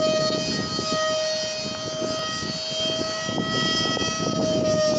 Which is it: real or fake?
real